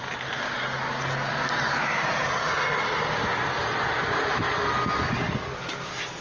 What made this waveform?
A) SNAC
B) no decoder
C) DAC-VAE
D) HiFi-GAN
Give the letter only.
B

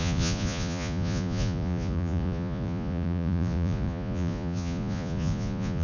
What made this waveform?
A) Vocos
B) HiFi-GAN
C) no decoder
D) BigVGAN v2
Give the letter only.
A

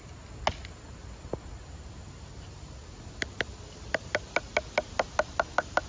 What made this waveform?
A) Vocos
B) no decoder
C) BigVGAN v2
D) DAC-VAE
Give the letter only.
B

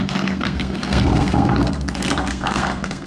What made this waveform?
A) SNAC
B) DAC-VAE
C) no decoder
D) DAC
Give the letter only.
A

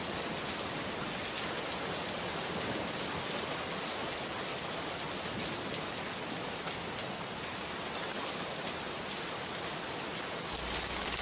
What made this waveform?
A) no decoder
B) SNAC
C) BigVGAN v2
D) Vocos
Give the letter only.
A